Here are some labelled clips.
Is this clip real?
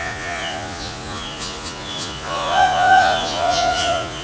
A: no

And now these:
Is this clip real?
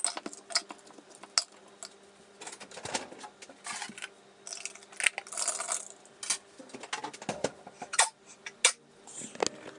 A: yes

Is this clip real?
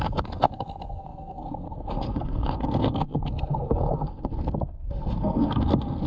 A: no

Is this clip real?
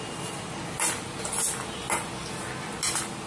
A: yes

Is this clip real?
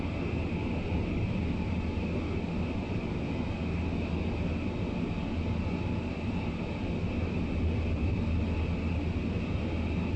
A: yes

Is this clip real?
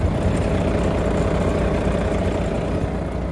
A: yes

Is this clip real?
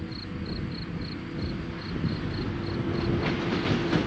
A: yes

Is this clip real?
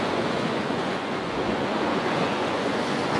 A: no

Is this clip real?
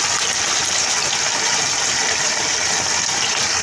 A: yes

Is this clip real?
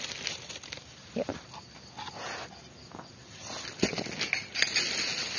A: yes